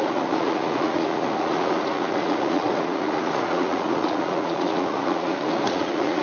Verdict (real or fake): fake